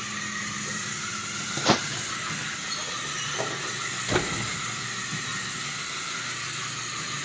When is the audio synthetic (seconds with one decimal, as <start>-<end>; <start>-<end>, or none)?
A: none